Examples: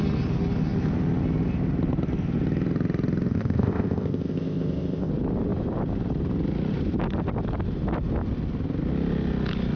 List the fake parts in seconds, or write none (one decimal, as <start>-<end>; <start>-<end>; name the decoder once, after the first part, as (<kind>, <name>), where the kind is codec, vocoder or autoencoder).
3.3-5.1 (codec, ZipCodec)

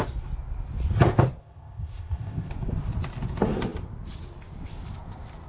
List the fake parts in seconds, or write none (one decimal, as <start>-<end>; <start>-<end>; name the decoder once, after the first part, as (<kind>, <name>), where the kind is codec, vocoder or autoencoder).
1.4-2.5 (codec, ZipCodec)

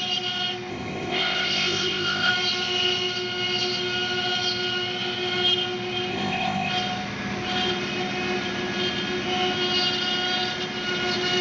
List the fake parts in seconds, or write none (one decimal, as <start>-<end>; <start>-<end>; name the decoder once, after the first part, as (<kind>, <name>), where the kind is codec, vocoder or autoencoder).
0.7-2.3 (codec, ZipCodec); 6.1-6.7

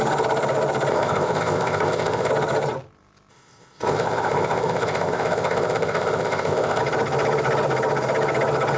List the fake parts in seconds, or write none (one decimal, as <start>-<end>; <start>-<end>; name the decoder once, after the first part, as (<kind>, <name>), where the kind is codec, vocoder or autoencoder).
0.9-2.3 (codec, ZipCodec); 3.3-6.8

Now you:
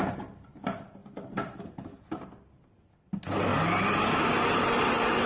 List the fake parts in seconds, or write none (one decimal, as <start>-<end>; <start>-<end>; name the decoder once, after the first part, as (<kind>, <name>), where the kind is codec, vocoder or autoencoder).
none